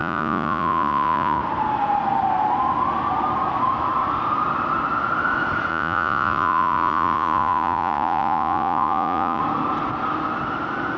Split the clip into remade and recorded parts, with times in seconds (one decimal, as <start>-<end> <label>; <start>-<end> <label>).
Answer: 0.0-1.4 remade; 1.4-5.7 recorded; 5.7-9.4 remade; 9.4-11.0 recorded